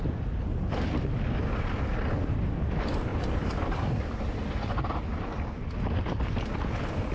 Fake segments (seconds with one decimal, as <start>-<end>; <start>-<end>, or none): none